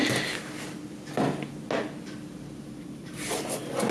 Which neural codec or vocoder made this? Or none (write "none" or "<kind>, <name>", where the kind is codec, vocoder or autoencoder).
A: none